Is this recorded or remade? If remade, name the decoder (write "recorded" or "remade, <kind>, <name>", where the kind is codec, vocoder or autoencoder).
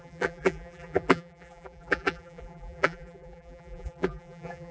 remade, vocoder, BigVGAN v2